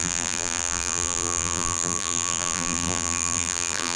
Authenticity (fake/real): fake